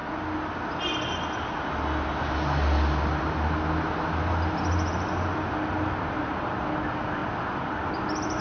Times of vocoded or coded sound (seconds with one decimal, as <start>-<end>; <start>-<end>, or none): none